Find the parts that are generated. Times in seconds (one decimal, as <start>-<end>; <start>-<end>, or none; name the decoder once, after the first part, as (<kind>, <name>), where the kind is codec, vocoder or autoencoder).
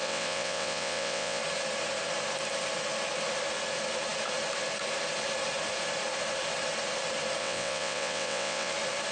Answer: 0.0-1.4 (vocoder, WaveNeXt); 7.4-8.7